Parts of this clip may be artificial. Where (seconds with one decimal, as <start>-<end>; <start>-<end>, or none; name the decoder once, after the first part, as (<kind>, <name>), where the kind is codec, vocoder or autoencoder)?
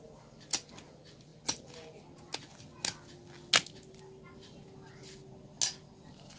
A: none